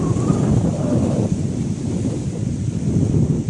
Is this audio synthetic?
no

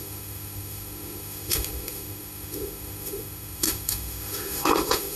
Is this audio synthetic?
yes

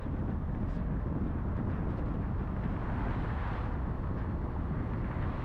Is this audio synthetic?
no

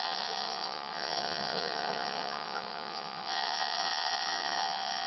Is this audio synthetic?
yes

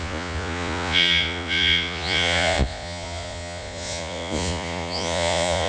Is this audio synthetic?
yes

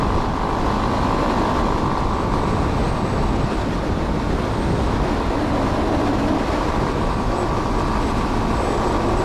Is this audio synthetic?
no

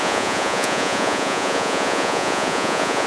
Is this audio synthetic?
yes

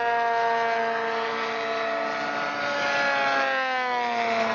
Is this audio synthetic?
no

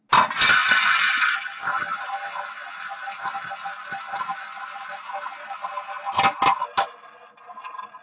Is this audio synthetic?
no